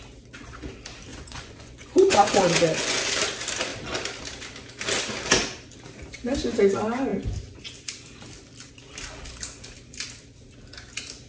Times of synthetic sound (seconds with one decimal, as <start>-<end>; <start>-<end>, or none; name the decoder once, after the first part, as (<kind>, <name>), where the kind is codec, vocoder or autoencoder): 1.1-3.1 (vocoder, Vocos)